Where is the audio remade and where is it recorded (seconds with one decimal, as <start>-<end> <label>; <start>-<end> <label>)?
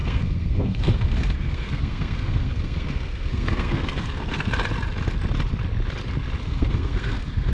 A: 0.0-4.5 remade; 4.5-6.4 recorded; 6.4-7.5 remade